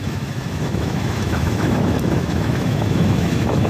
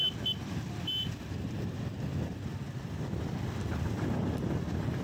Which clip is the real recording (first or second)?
second